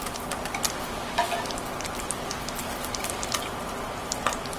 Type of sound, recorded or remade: recorded